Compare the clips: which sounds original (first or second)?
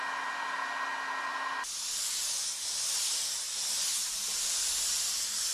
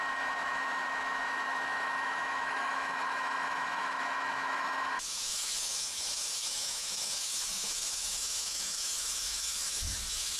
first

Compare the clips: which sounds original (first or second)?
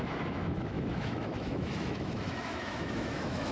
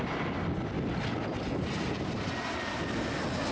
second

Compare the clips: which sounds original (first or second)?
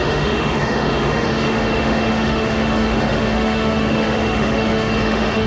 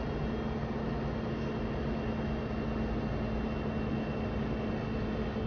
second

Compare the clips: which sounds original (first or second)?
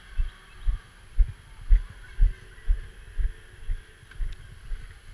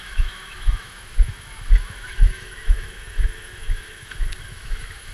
first